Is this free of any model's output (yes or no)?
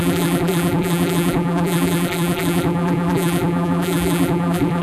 no